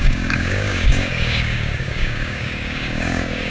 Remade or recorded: remade